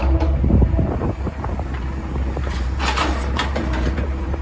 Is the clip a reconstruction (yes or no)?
yes